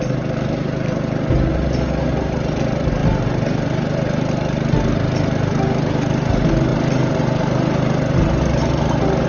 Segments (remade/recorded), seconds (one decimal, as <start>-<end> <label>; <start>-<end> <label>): 0.0-9.3 recorded